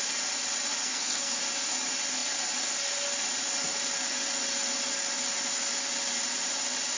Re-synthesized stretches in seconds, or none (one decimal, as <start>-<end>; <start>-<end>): 0.8-1.4